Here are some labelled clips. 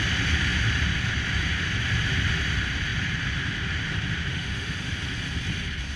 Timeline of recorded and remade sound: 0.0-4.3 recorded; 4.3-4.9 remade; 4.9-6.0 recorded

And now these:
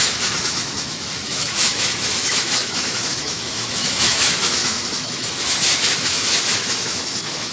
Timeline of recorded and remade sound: 0.0-7.5 remade

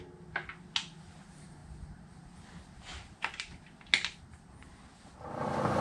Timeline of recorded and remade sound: 0.0-5.8 recorded

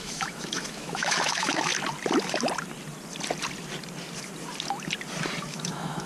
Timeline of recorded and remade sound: 0.0-1.7 remade; 1.7-5.4 recorded; 5.4-6.1 remade

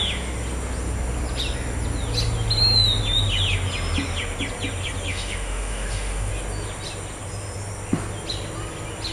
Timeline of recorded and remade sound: 0.0-5.1 recorded; 5.1-6.3 remade; 6.3-9.1 recorded

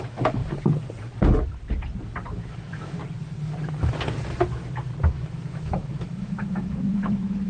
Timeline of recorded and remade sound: 0.0-0.4 remade; 0.4-2.3 recorded; 2.3-3.0 remade; 3.0-5.1 recorded; 5.1-7.5 remade

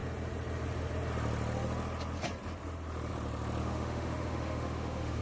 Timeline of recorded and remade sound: 0.0-3.6 recorded; 3.6-5.2 remade